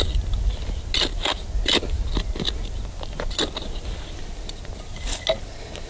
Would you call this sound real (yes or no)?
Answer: yes